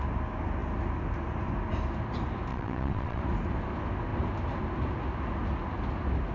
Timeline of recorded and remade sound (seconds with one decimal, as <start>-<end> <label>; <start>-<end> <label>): 0.0-2.5 recorded; 2.5-3.2 remade; 3.2-6.3 recorded

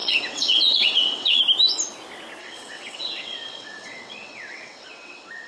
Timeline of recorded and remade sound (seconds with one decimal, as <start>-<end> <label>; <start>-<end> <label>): 0.0-1.4 remade; 1.4-2.4 recorded; 2.4-5.5 remade